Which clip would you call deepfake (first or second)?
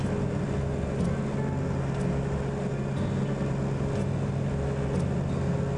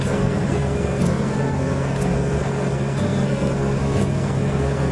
second